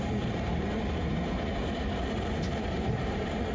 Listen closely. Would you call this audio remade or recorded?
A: remade